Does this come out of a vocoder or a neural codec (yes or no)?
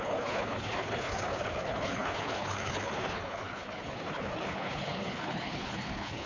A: yes